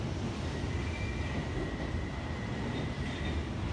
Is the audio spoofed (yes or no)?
no